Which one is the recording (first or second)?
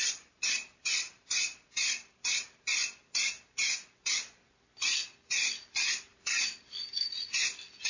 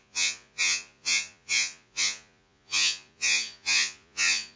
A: first